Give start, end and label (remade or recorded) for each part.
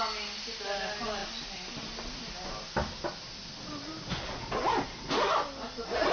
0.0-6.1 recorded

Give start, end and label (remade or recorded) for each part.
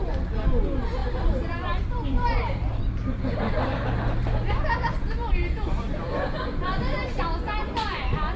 0.0-1.0 recorded; 1.0-3.7 remade; 3.7-8.4 recorded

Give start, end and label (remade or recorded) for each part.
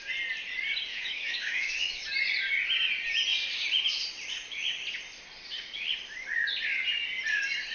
0.0-0.9 recorded; 0.9-2.0 remade; 2.0-7.7 recorded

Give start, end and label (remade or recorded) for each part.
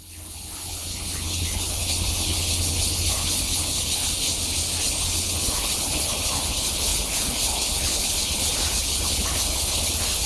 0.0-4.3 remade; 4.3-4.8 recorded; 4.8-10.3 remade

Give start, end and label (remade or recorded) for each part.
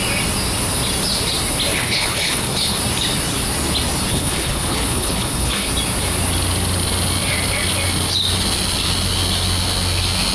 0.0-1.7 recorded; 1.7-2.8 remade; 2.8-4.1 recorded; 4.1-5.7 remade; 5.7-10.3 recorded